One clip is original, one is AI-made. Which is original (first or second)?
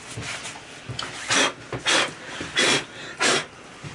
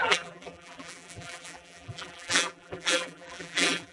first